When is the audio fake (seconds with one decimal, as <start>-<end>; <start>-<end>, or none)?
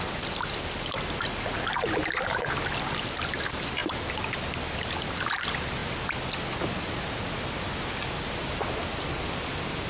none